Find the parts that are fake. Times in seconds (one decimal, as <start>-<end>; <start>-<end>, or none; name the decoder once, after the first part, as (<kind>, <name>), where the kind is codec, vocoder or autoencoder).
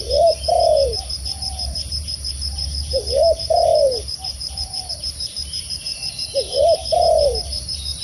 0.0-8.0 (vocoder, BigVGAN v2)